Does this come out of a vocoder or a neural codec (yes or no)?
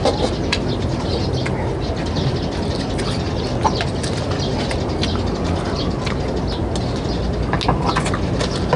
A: no